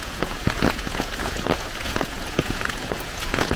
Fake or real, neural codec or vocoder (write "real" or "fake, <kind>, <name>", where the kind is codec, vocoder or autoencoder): fake, vocoder, Vocos